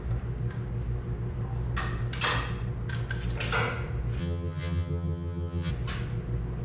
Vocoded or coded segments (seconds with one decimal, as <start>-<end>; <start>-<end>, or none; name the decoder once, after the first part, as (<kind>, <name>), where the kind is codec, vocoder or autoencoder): 4.2-5.7 (vocoder, HiFi-GAN)